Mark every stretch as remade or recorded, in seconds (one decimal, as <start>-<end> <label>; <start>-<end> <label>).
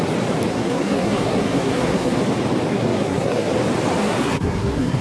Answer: 0.0-0.5 recorded; 0.5-2.2 remade; 2.2-2.7 recorded; 2.7-3.5 remade; 3.5-4.0 recorded; 4.0-5.0 remade